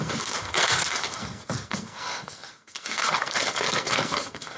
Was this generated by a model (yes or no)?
yes